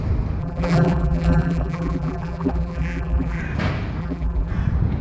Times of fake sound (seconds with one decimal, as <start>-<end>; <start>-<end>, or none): 0.4-3.4; 4.0-4.5